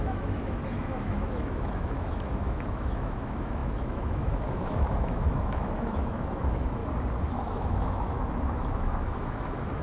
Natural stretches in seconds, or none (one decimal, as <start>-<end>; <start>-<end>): 6.8-7.5

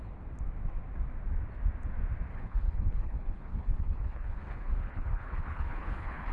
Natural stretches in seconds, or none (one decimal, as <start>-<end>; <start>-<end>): 0.0-2.3

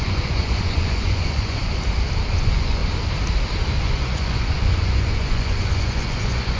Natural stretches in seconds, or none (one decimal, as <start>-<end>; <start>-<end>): 1.6-2.3; 2.8-3.8

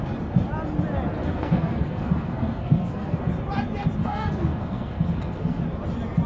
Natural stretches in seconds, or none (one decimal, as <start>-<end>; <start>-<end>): 0.0-1.2; 3.2-4.0; 5.6-6.3

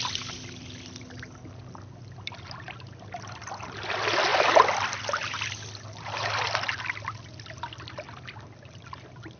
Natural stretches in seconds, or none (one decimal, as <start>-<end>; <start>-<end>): 0.0-9.4

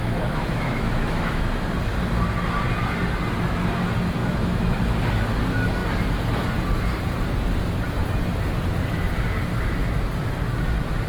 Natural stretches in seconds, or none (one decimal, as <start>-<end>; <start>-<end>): 1.4-4.2; 4.8-11.1